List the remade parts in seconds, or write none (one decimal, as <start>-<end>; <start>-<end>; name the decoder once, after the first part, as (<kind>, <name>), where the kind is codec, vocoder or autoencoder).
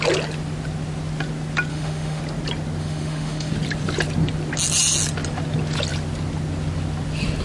1.7-2.2 (autoencoder, DAC-VAE); 2.8-3.5